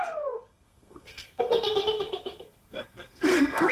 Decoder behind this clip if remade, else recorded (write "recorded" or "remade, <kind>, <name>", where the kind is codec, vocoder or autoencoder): remade, codec, SNAC